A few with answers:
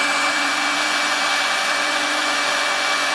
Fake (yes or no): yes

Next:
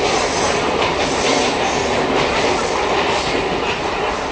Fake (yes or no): no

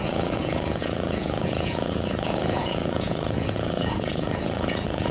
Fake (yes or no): yes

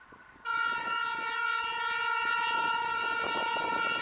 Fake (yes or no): no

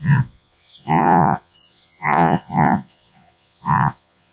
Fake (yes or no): yes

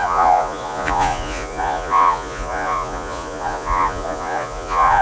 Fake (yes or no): yes